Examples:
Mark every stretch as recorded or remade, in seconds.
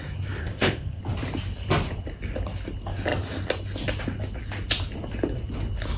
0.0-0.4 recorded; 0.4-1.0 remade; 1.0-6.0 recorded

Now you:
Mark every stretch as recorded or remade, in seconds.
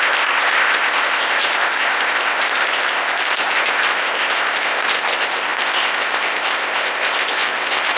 0.0-8.0 remade